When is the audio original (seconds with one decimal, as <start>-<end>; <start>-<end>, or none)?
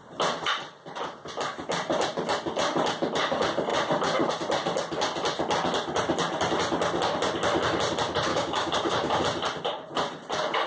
0.0-8.3; 9.2-10.7